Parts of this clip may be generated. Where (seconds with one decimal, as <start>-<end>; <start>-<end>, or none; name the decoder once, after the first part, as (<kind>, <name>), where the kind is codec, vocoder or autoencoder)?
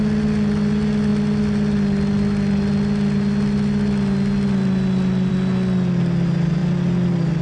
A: none